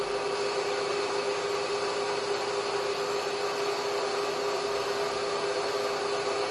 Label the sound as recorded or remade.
recorded